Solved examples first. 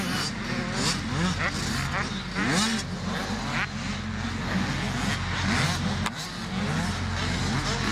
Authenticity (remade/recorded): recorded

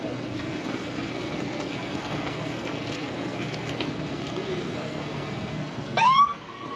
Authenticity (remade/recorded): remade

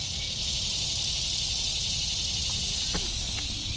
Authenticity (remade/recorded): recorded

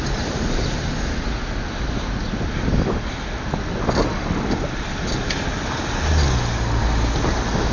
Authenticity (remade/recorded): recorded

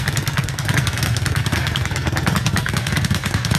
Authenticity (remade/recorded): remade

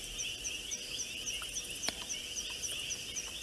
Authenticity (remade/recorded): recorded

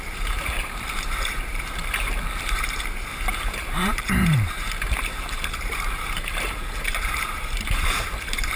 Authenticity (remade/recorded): remade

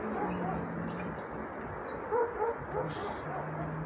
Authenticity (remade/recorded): recorded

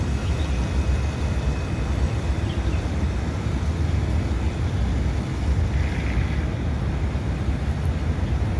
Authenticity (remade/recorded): recorded